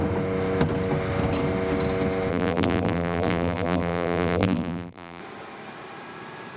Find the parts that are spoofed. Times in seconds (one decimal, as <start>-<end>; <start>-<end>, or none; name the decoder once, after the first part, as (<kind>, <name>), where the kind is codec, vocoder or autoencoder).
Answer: 2.3-5.2 (vocoder, BigVGAN v2)

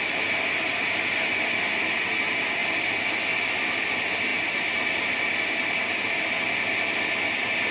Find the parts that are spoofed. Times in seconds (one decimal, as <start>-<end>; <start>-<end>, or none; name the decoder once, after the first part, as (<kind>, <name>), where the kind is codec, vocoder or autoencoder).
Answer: none

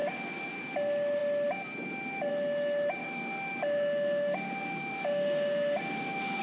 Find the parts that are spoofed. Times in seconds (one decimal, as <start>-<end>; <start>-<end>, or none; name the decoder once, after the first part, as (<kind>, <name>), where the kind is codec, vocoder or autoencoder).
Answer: 0.0-0.5 (codec, DAC); 3.0-6.4

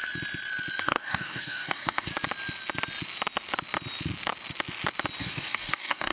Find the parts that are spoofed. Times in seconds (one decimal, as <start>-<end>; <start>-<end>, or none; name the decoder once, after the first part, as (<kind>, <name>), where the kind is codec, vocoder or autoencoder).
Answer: 0.8-2.1 (codec, DAC); 5.2-6.1

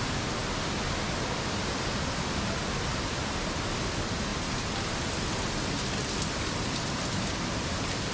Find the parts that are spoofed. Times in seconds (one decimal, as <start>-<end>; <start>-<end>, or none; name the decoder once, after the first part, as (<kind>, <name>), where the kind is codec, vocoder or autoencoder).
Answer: none

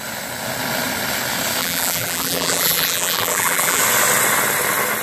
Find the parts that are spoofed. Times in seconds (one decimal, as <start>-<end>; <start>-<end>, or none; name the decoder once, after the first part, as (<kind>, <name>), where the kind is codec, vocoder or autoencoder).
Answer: 1.6-3.8 (vocoder, BigVGAN v2)